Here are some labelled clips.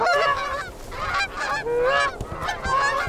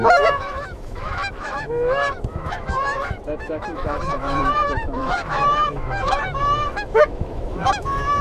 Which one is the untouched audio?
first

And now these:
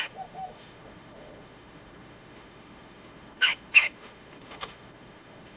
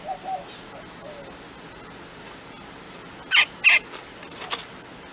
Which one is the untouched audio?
second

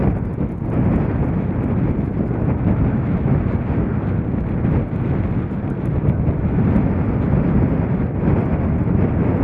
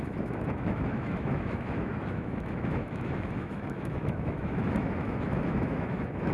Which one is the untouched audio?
first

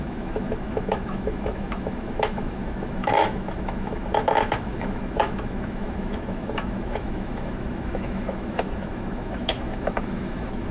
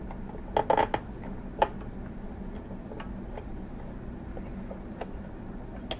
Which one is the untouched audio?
second